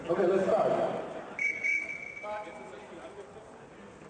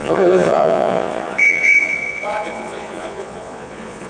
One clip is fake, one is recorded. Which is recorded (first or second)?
first